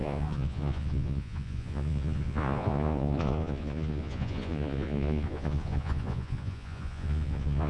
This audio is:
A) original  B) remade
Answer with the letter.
B